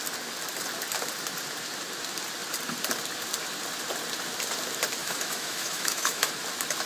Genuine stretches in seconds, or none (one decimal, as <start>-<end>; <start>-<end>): 0.0-5.0; 6.3-6.9